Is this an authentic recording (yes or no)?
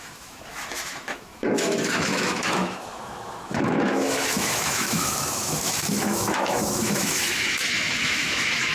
no